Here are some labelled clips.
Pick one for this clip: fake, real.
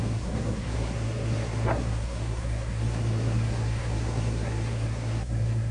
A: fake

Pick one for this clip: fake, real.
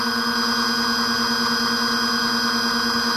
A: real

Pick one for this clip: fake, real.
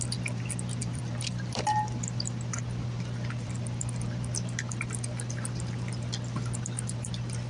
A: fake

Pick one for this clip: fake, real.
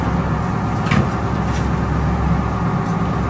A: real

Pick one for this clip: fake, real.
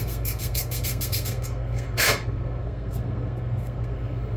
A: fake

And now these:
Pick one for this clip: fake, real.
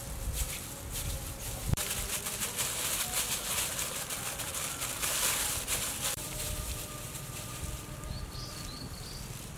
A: fake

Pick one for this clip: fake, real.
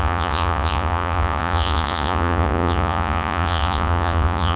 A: fake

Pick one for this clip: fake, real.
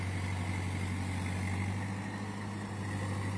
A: real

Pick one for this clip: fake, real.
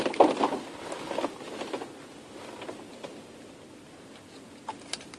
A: real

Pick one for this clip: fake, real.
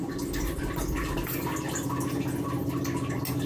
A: real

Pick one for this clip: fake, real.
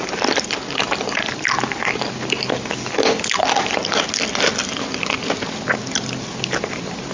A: real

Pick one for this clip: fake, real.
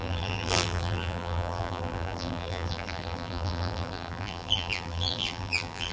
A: fake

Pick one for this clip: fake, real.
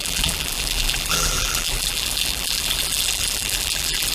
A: fake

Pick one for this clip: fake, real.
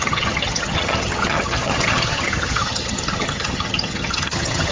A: fake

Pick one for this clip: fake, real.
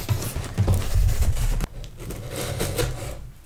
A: real